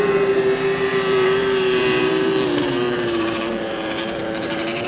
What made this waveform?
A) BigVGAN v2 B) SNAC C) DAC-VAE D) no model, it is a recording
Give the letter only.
A